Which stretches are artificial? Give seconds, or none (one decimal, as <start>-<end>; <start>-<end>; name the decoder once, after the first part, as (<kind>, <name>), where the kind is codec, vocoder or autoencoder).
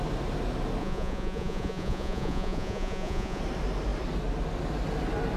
0.8-3.4 (vocoder, Vocos)